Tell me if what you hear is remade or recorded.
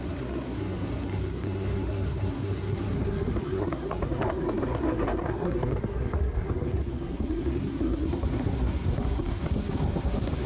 remade